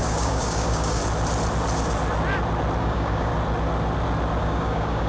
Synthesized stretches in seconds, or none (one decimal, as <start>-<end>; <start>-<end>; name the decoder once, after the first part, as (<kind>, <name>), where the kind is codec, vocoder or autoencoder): 0.0-1.0 (codec, DAC); 2.8-3.3; 4.4-5.1